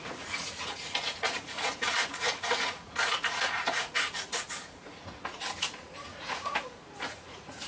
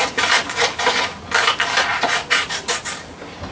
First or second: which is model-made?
first